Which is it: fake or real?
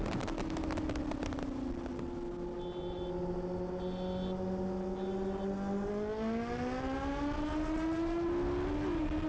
real